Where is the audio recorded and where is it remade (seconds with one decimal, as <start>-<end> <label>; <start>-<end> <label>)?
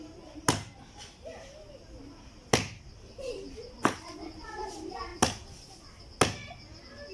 0.0-7.1 recorded